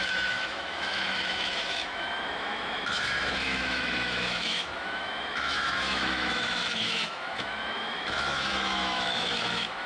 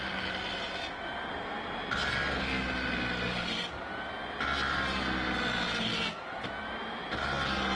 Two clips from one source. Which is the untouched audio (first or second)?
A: second